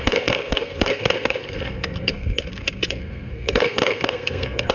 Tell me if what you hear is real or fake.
fake